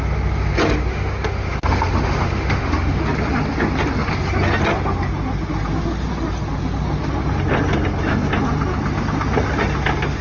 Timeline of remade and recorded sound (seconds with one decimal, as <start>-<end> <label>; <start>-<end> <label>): 0.0-0.9 recorded; 0.9-3.0 remade; 3.0-10.2 recorded